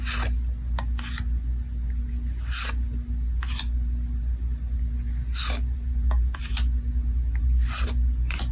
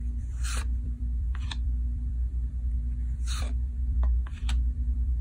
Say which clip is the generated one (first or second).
second